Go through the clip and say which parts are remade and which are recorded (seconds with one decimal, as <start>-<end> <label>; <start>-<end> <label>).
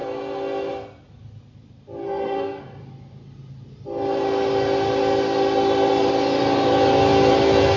0.0-2.0 recorded; 2.0-2.6 remade; 2.6-7.8 recorded